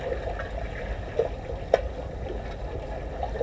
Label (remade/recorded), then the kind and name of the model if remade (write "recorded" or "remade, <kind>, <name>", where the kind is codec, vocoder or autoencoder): recorded